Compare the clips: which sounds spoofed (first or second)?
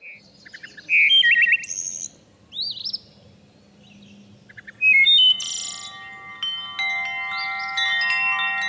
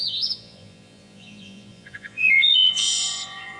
second